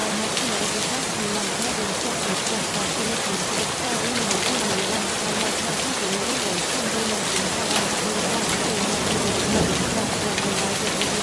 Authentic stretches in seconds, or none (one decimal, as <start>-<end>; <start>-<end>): 7.6-11.2

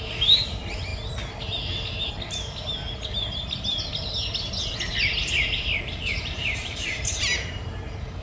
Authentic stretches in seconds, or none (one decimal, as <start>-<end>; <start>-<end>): 0.9-5.8

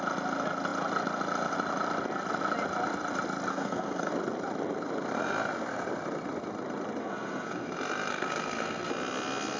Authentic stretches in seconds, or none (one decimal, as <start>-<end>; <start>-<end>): 0.0-3.5; 4.1-7.0; 7.7-8.1; 8.9-9.6

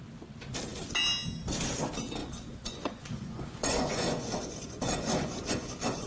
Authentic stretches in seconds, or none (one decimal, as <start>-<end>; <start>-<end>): 0.0-2.2

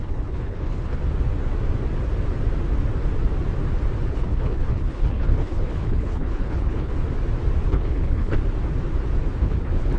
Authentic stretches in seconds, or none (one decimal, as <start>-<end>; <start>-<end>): 1.0-4.1; 6.9-7.7; 8.4-9.4

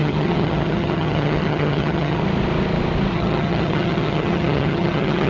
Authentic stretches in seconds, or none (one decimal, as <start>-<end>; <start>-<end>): 2.2-3.1